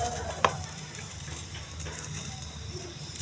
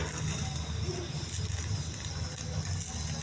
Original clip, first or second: second